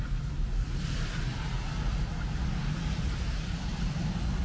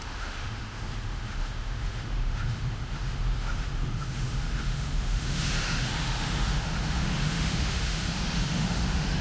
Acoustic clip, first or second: first